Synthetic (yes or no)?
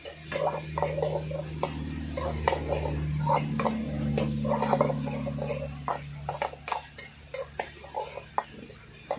no